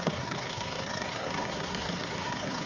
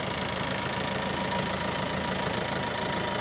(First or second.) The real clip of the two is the second